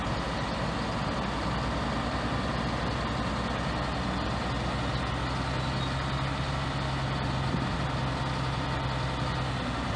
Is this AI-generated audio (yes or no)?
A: no